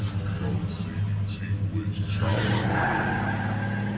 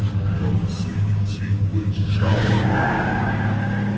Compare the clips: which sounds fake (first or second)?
second